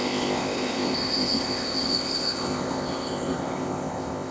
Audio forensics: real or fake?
fake